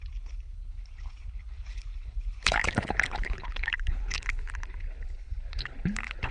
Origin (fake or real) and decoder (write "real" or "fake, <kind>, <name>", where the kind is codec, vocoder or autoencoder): fake, codec, HILCodec